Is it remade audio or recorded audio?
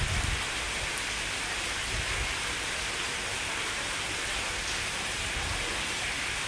recorded